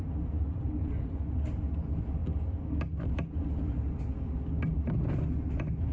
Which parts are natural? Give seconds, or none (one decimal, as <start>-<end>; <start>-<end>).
0.0-5.9